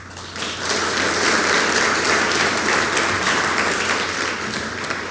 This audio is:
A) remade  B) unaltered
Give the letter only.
A